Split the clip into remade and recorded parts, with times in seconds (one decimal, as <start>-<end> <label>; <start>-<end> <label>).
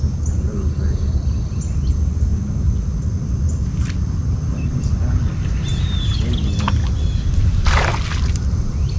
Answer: 0.0-9.0 recorded